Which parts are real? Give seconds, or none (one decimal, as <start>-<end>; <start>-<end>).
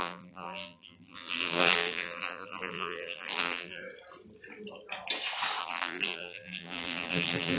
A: 3.8-5.6